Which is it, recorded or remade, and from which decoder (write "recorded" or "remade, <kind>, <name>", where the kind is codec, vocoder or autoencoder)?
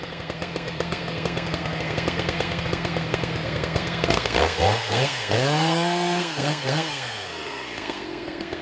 remade, codec, SNAC